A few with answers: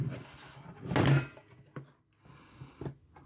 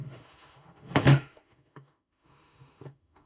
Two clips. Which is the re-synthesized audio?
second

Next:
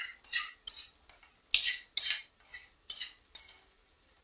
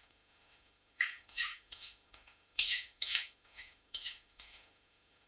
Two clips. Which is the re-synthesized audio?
second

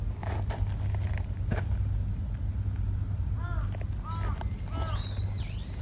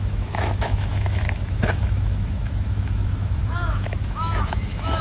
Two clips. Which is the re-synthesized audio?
second